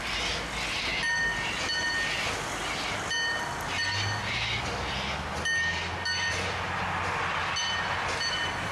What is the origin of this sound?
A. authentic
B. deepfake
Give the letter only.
A